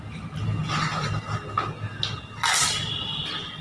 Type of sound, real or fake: real